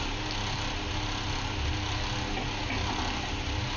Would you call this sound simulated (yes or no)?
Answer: no